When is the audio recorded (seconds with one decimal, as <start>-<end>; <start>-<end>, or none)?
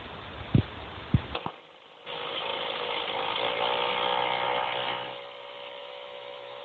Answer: 0.0-5.8